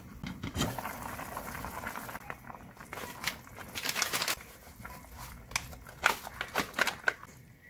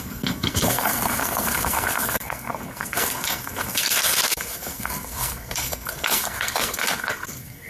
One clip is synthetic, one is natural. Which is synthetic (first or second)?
second